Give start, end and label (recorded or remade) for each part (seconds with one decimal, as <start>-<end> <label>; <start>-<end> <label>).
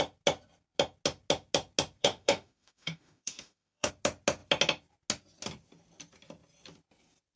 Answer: 0.0-2.0 recorded; 2.0-3.9 remade; 3.9-7.4 recorded